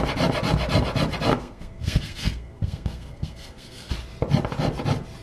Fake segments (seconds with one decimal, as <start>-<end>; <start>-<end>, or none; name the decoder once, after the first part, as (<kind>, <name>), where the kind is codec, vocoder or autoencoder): 1.3-3.9 (codec, SNAC)

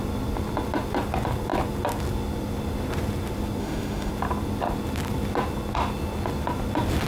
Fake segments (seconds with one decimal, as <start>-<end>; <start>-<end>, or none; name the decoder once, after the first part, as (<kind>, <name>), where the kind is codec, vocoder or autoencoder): 3.6-4.1 (autoencoder, DAC-VAE)